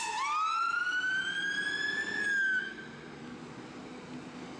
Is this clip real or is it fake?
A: real